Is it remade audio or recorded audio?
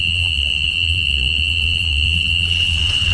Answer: remade